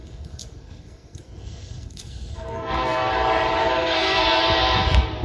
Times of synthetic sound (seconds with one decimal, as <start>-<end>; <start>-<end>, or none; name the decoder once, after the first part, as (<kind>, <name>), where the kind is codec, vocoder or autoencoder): 0.0-3.1 (codec, SNAC); 3.6-4.2